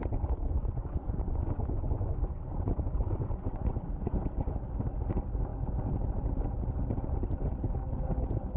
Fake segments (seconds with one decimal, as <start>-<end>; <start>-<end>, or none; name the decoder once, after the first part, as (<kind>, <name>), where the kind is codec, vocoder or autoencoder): 0.5-4.1 (vocoder, Vocos)